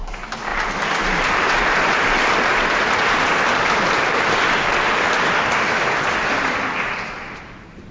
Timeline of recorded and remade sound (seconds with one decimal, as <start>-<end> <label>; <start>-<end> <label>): 0.0-7.9 recorded